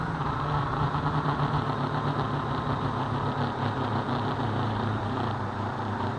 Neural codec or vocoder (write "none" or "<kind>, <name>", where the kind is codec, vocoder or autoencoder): vocoder, BigVGAN v2